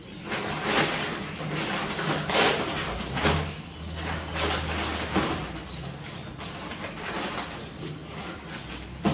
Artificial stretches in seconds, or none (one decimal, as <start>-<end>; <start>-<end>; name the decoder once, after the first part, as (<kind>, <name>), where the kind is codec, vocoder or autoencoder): none

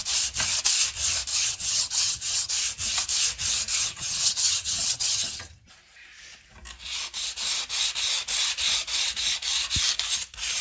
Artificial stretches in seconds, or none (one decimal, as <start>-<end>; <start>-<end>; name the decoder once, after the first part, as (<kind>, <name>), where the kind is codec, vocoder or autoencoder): 1.3-2.5 (vocoder, HiFi-GAN); 3.8-5.7

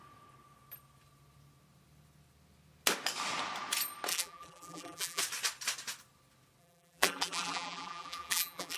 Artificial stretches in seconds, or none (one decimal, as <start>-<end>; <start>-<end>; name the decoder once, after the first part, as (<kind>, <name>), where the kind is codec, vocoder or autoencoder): 4.1-5.2 (vocoder, BigVGAN v2); 6.6-8.8

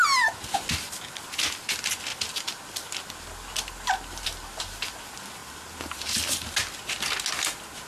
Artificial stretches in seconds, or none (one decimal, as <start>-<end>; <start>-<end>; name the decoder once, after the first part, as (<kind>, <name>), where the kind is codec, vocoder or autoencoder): none